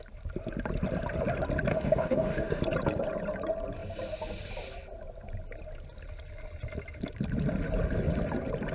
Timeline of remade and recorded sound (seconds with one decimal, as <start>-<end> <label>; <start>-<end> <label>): 0.0-1.7 recorded; 1.7-2.6 remade; 2.6-8.7 recorded